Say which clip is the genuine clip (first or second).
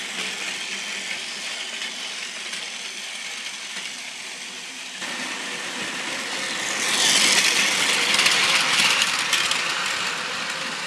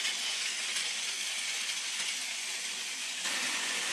first